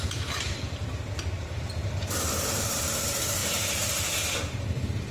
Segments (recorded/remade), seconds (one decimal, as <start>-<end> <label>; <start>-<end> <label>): 0.0-5.1 remade